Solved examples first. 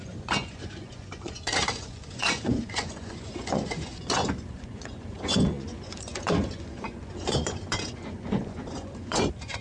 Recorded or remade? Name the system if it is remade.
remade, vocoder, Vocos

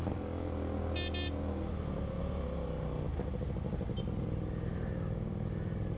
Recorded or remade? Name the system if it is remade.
recorded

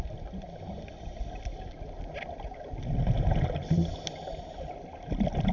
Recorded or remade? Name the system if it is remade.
recorded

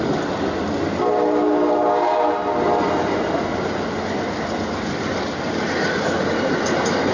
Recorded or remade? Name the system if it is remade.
recorded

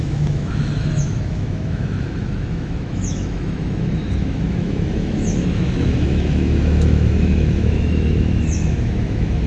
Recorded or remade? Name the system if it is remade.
remade, autoencoder, DAC-VAE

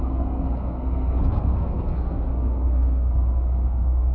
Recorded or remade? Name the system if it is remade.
remade, codec, SNAC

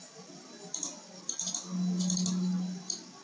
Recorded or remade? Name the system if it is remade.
recorded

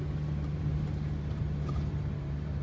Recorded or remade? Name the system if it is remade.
recorded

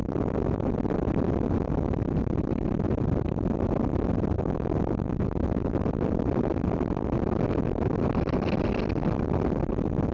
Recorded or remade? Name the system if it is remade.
recorded